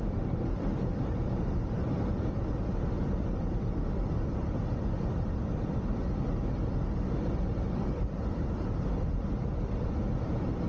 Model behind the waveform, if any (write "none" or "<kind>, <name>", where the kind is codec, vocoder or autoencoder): vocoder, BigVGAN v2